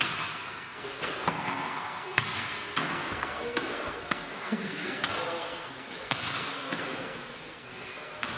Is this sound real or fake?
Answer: fake